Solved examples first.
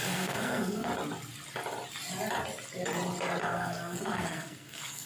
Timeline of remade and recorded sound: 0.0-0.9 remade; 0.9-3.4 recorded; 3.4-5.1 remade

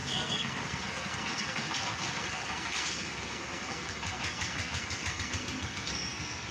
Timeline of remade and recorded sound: 0.0-6.5 remade

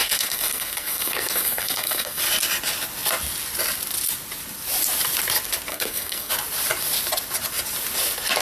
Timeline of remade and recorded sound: 0.0-2.2 remade; 2.2-5.7 recorded; 5.7-6.3 remade; 6.3-8.4 recorded

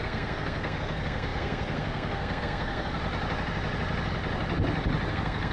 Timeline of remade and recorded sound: 0.0-3.0 remade; 3.0-5.1 recorded; 5.1-5.5 remade

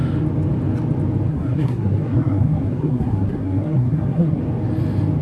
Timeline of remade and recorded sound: 0.0-1.3 recorded; 1.3-4.4 remade; 4.4-5.2 recorded

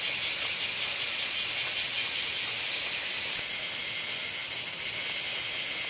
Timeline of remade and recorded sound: 0.0-5.9 recorded

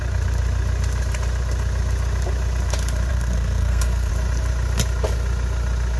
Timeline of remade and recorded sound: 0.0-3.1 recorded; 3.1-4.1 remade; 4.1-6.0 recorded